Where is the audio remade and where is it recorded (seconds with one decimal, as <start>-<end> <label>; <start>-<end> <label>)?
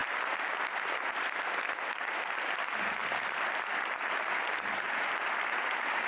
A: 0.0-3.0 recorded; 3.0-4.3 remade; 4.3-6.1 recorded